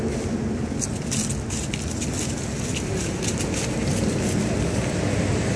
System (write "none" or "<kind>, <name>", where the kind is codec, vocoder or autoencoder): none